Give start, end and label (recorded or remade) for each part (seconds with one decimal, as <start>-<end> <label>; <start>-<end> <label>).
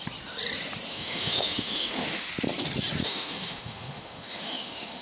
0.0-0.9 recorded; 0.9-2.3 remade; 2.3-3.0 recorded; 3.0-5.0 remade